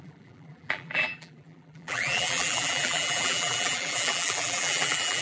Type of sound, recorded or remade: remade